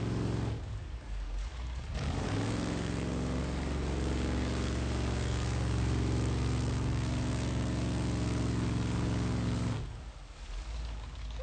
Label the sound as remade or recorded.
remade